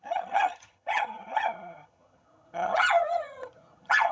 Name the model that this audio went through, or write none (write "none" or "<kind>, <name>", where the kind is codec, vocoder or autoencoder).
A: vocoder, HiFi-GAN